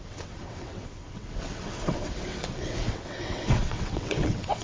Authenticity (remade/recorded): remade